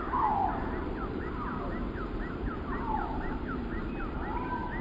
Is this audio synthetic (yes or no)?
yes